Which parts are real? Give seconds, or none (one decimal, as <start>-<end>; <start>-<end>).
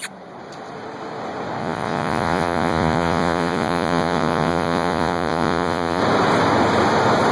0.0-1.6; 6.0-7.3